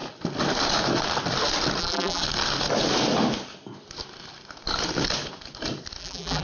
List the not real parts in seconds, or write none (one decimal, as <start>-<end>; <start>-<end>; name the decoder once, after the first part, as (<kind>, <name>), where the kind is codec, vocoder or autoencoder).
1.8-2.2 (vocoder, BigVGAN v2); 6.0-6.4